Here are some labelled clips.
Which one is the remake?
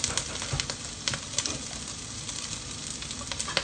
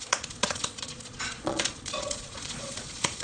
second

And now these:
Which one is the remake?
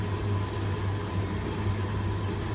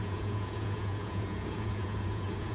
second